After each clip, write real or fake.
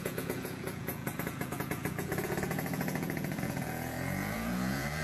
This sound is fake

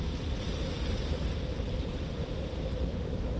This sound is real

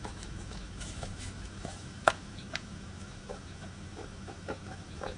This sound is fake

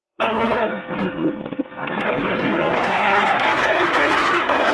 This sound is fake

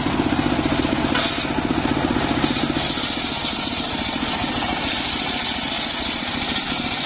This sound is real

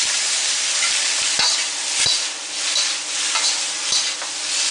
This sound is real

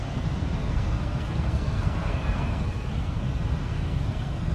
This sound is fake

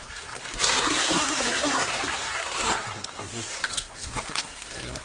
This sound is fake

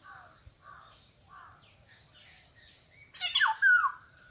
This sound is real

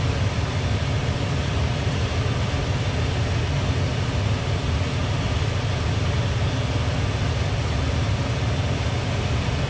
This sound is real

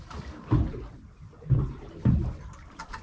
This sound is real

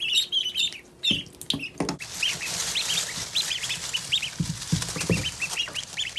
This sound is real